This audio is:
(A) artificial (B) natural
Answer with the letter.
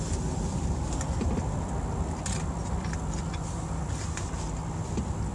B